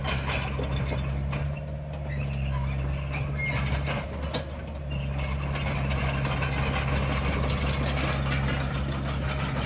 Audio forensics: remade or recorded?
recorded